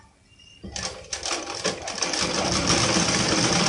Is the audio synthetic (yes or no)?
no